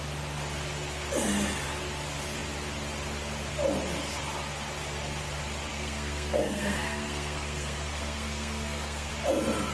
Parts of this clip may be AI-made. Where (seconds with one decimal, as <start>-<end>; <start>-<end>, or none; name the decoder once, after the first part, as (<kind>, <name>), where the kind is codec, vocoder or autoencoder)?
5.7-9.1 (codec, SNAC)